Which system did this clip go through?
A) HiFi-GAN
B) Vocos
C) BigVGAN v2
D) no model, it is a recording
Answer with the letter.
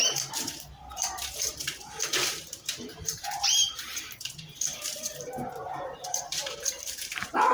C